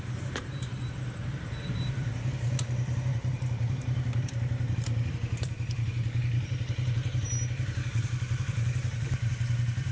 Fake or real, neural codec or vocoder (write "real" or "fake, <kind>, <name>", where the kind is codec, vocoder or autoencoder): fake, vocoder, BigVGAN v2